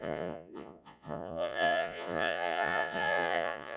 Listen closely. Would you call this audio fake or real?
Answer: fake